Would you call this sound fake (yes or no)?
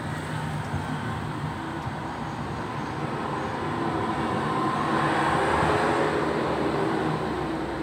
no